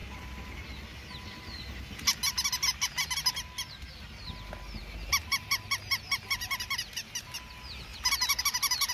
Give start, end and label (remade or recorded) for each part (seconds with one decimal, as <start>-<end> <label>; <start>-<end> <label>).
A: 0.0-8.9 recorded